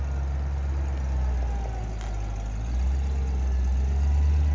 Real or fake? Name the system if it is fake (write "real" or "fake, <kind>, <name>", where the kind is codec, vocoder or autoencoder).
real